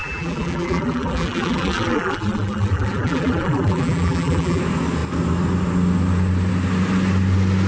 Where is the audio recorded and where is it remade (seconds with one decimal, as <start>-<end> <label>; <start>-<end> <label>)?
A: 0.0-4.6 remade; 4.6-7.7 recorded